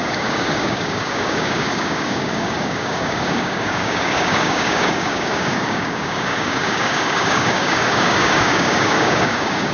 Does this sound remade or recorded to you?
remade